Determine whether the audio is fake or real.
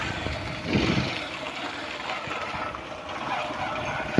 real